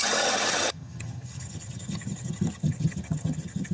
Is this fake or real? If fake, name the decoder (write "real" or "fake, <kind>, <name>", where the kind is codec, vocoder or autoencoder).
fake, vocoder, HiFi-GAN